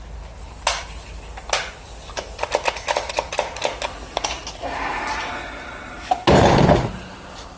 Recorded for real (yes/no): yes